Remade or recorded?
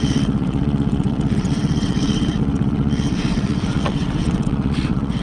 remade